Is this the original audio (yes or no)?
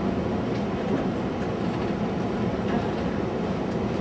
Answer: yes